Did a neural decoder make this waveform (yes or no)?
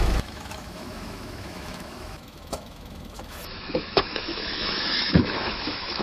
yes